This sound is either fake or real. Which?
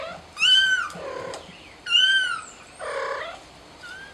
real